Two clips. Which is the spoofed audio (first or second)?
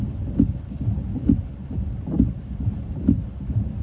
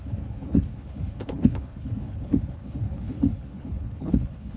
second